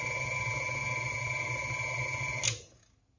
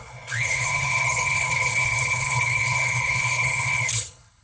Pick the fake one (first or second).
second